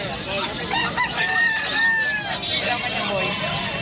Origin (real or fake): real